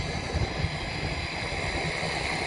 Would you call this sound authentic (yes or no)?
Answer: yes